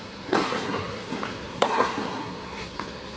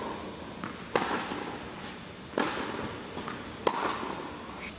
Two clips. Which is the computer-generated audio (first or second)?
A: first